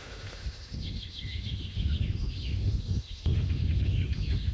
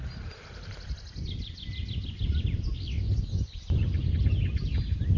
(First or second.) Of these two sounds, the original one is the second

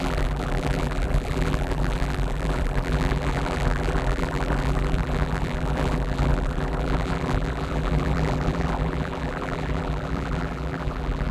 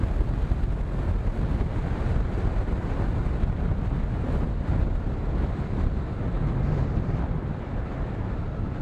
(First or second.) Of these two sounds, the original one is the second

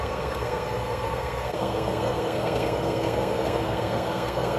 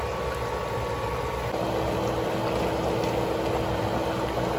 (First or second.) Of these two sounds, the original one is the second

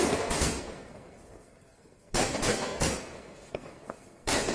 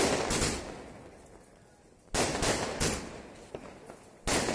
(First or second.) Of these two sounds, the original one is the second